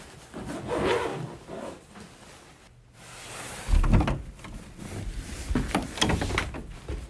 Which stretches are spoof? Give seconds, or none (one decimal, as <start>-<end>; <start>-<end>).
none